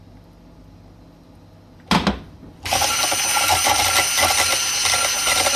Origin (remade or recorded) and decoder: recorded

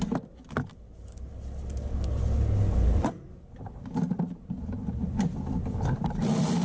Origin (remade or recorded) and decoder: recorded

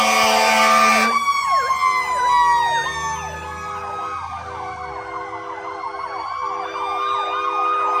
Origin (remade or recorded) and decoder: recorded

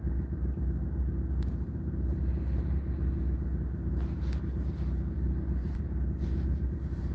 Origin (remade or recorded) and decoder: recorded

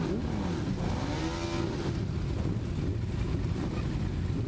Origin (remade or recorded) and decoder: recorded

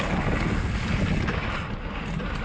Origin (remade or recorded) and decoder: recorded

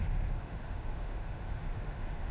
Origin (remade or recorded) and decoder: remade, autoencoder, DAC-VAE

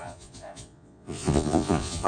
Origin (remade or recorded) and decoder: remade, vocoder, Vocos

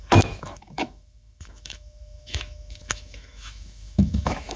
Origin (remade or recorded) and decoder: remade, autoencoder, DAC-VAE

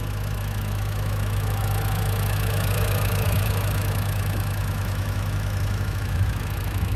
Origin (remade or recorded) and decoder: remade, autoencoder, DAC-VAE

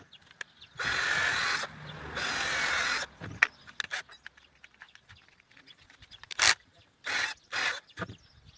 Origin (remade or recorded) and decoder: recorded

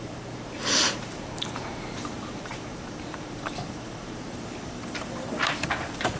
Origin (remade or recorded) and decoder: remade, vocoder, BigVGAN v2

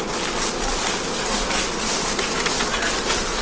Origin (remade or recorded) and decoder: recorded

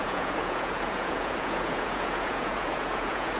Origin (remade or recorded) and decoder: remade, vocoder, Vocos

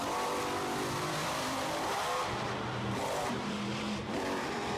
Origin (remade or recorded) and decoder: remade, vocoder, BigVGAN v2